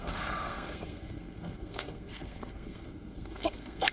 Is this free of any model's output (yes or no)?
no